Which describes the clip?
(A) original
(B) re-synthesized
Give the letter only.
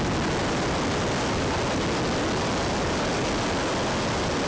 A